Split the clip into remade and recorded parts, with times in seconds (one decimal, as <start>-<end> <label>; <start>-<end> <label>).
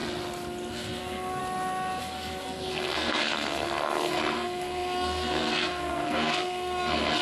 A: 0.0-0.7 recorded; 0.7-1.4 remade; 1.4-2.0 recorded; 2.0-7.2 remade